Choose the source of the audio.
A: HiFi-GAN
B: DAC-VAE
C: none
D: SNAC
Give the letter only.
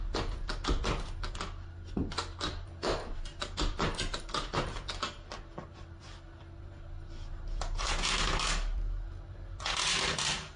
C